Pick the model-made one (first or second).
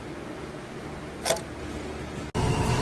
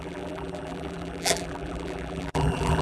second